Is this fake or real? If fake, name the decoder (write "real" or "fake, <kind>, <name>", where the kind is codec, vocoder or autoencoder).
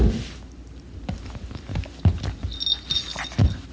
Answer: real